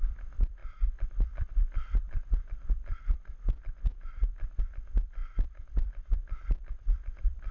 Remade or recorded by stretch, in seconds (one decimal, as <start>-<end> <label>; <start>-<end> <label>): 0.0-7.5 recorded